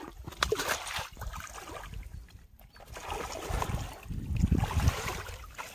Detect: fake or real real